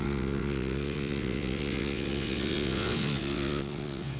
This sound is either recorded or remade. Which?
remade